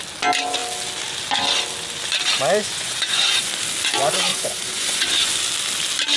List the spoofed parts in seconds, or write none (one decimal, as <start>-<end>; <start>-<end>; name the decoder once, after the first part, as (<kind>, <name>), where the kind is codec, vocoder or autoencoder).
2.6-3.5 (vocoder, Vocos); 4.3-5.3